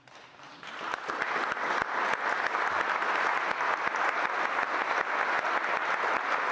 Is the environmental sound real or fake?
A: real